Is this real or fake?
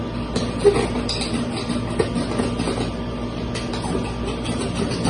real